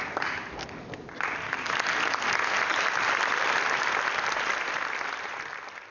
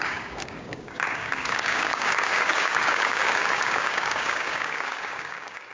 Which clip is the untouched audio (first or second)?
first